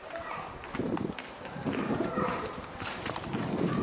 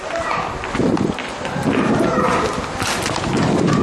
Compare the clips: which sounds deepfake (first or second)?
first